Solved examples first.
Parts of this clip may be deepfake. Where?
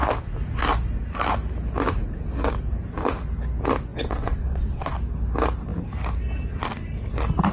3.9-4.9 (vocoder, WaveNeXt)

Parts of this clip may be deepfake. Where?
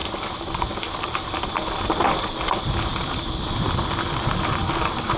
none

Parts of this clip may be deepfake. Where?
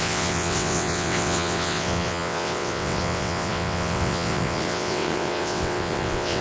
0.0-6.4 (vocoder, WaveNeXt)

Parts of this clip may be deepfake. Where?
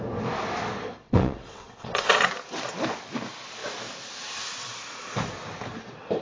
1.0-2.2 (vocoder, WaveNeXt)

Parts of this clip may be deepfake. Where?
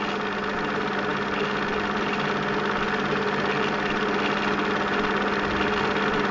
none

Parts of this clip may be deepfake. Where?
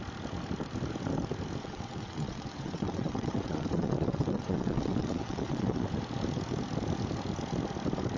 1.6-5.9 (vocoder, WaveNeXt)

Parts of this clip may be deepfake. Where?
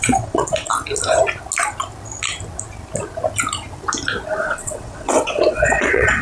0.0-0.7 (vocoder, WaveNeXt); 4.4-6.2